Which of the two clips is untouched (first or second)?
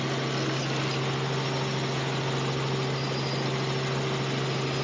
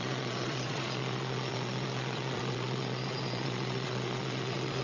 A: first